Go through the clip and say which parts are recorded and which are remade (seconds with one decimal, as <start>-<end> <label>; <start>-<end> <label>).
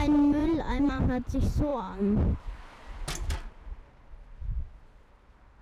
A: 0.0-0.4 recorded; 0.4-1.0 remade; 1.0-5.6 recorded